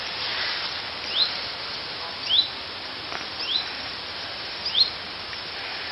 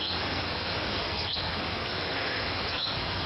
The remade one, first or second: second